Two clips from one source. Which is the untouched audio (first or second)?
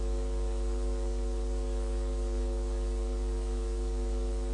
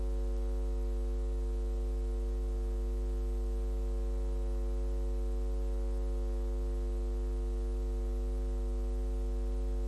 second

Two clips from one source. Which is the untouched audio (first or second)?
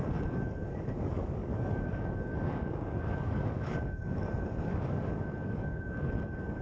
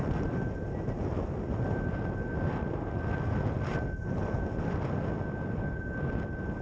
second